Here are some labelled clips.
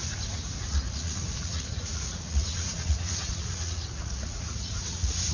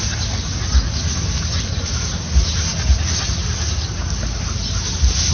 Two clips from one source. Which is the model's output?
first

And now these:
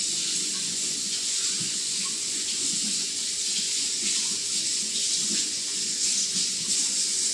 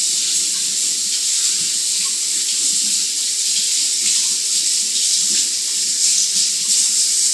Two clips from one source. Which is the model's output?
first